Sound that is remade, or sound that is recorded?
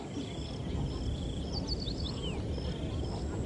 recorded